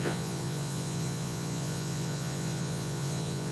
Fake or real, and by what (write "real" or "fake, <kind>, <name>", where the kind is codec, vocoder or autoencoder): fake, vocoder, Vocos